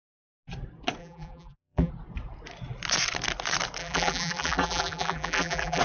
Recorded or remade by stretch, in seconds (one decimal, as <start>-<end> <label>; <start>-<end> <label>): 0.0-1.0 recorded; 1.0-1.9 remade; 1.9-3.8 recorded; 3.8-5.8 remade